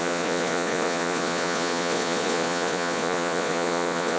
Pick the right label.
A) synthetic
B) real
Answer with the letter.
A